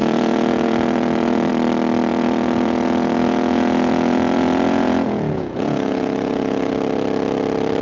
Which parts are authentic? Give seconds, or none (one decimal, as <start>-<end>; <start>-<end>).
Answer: 1.5-2.1; 6.7-7.8